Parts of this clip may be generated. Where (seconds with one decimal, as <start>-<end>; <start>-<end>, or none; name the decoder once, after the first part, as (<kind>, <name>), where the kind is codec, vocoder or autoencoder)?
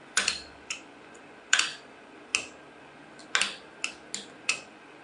0.0-2.3 (vocoder, Vocos); 2.8-3.2; 4.4-5.0